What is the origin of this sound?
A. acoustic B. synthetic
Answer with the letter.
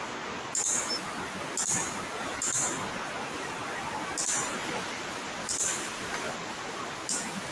A